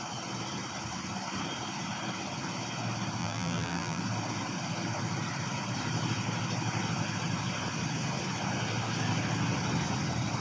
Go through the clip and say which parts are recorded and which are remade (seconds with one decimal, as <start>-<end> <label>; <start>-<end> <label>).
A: 0.0-3.2 recorded; 3.2-4.0 remade; 4.0-10.4 recorded